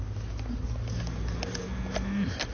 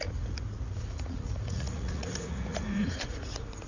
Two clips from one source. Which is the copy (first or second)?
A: second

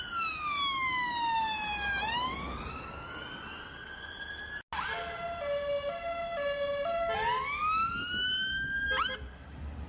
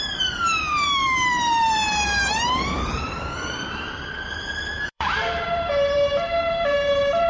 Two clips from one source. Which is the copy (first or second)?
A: second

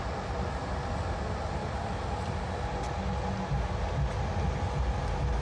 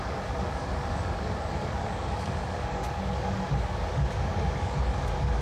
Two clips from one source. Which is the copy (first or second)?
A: second